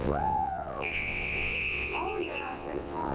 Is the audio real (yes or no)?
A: no